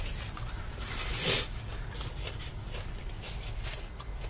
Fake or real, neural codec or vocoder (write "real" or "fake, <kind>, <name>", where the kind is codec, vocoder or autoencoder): real